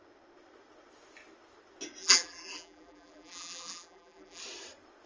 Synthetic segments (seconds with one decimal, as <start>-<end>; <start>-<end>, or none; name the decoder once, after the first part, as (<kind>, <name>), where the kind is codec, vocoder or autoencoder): 2.0-4.4 (vocoder, BigVGAN v2)